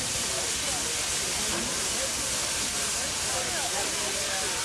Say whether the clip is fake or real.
real